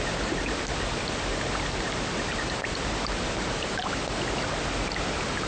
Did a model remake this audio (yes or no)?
no